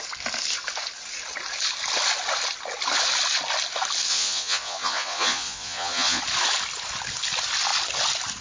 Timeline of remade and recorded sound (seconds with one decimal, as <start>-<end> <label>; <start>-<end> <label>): 0.0-4.1 recorded; 4.1-6.2 remade; 6.2-8.4 recorded